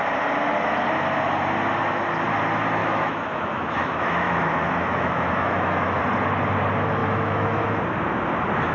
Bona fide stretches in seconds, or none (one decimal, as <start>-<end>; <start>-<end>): 0.0-2.8; 6.0-7.0; 7.8-8.7